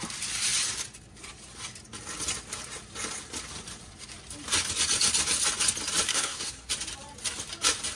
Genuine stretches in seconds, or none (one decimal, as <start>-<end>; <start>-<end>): 0.0-6.1; 6.7-8.0